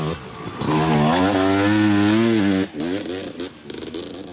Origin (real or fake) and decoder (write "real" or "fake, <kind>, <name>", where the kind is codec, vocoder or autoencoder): real